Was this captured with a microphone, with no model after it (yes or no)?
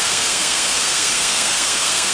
no